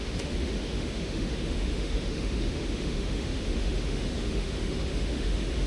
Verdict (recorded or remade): remade